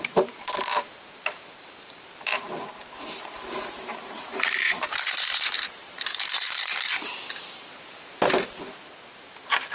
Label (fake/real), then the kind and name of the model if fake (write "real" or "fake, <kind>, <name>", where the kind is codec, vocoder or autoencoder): fake, vocoder, BigVGAN v2